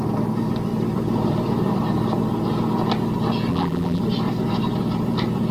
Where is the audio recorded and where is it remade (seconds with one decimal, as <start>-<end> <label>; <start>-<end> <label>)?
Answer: 0.0-3.5 recorded; 3.5-4.0 remade; 4.0-5.5 recorded